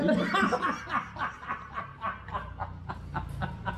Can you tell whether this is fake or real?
real